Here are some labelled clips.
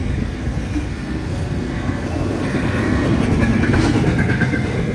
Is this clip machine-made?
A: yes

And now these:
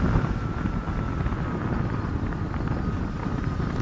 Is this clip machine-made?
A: no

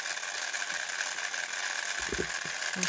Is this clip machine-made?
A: no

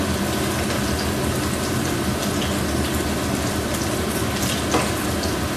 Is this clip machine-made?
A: no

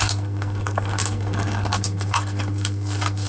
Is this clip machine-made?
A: yes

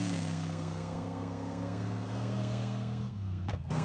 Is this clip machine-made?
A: yes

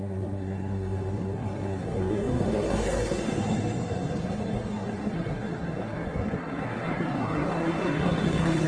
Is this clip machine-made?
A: yes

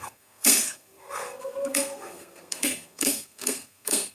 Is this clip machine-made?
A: yes